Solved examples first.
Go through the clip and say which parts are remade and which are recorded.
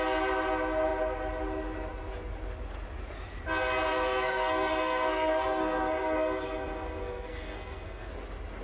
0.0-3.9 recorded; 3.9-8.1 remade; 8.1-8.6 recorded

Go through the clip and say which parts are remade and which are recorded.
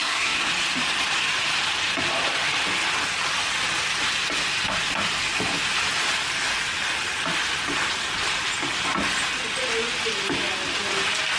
0.0-0.5 remade; 0.5-11.4 recorded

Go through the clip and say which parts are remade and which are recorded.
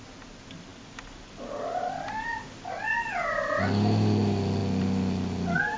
0.0-5.8 recorded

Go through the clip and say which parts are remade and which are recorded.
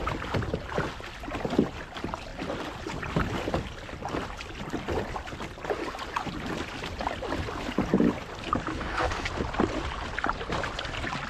0.0-8.7 recorded; 8.7-9.3 remade; 9.3-11.3 recorded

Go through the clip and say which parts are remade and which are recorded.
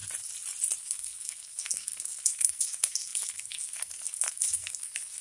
0.0-0.8 recorded; 0.8-5.2 remade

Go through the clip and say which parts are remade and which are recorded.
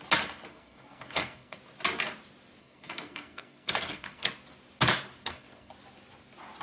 0.0-0.5 recorded; 0.5-1.6 remade; 1.6-2.6 recorded; 2.6-4.3 remade; 4.3-5.2 recorded; 5.2-5.7 remade; 5.7-6.6 recorded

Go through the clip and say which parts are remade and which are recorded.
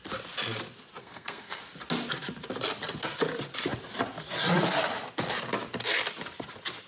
0.0-1.0 recorded; 1.0-1.6 remade; 1.6-6.9 recorded